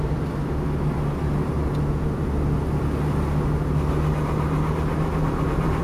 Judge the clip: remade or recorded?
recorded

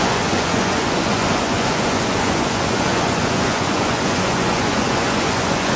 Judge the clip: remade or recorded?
remade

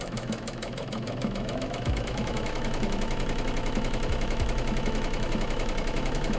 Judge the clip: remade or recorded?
remade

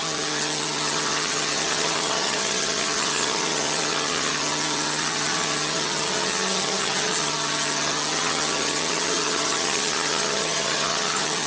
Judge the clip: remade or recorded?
remade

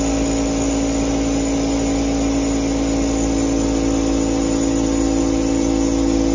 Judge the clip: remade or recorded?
recorded